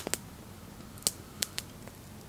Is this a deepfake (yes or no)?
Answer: no